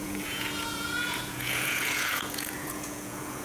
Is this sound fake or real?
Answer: fake